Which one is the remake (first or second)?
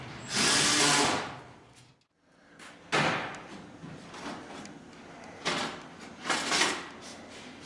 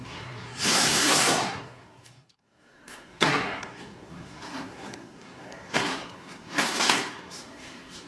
second